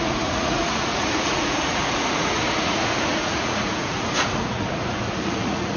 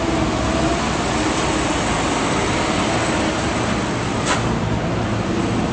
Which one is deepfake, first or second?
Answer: first